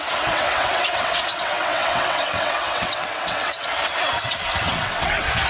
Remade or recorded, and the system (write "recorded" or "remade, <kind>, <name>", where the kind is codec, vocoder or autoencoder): remade, vocoder, WaveNeXt